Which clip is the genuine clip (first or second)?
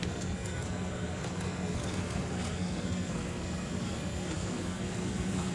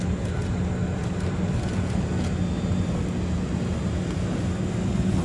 second